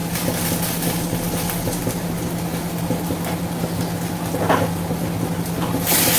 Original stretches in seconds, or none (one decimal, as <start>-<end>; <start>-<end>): 0.0-6.2